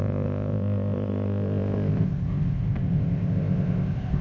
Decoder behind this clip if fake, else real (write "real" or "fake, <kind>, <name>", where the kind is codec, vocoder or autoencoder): fake, codec, ZipCodec